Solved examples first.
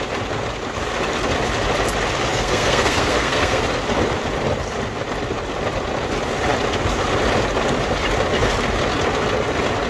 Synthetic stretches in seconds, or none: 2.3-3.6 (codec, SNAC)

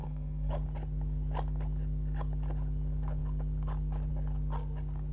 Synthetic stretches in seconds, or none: 0.0-0.5 (codec, SNAC)

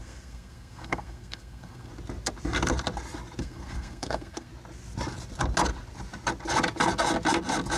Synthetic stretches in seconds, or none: 0.0-1.9 (codec, SNAC); 3.4-4.5

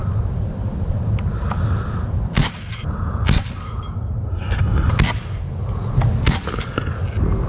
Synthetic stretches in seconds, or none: 4.3-4.9 (codec, SNAC)

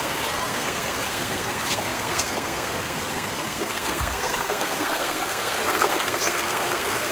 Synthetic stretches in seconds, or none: 0.0-7.1 (codec, SNAC)

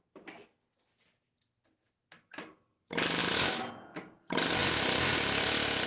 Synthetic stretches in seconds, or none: none